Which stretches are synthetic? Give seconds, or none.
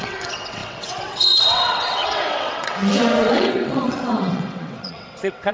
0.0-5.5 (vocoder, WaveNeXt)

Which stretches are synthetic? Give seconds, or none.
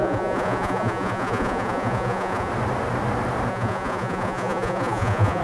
0.0-2.5 (vocoder, Vocos); 3.5-5.4